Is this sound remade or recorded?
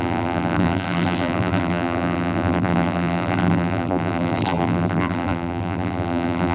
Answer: remade